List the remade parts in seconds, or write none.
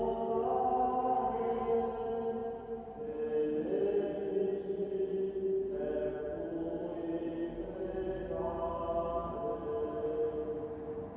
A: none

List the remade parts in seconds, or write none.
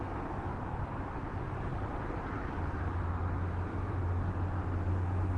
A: none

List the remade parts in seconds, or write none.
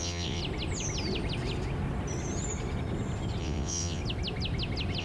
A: 0.0-0.4 (vocoder, WaveNeXt); 3.4-4.0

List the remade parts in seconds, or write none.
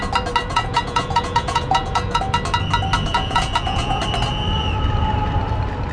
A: 0.4-2.2 (vocoder, Vocos); 3.1-4.0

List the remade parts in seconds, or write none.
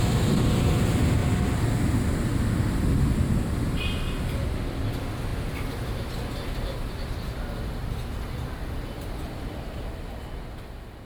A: none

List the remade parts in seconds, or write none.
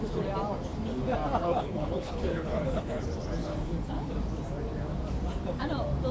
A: 1.4-3.0 (codec, HILCodec); 3.4-4.1